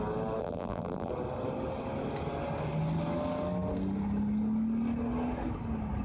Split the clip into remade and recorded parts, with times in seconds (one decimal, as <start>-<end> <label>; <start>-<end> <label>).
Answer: 0.0-0.4 recorded; 0.4-1.1 remade; 1.1-6.0 recorded